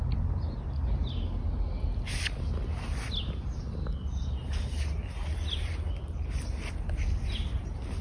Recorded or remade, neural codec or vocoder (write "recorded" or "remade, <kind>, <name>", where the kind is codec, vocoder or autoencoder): recorded